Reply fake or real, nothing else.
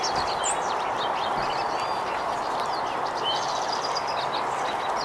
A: real